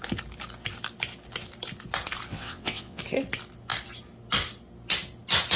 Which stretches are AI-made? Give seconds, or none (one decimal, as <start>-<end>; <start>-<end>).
2.3-3.0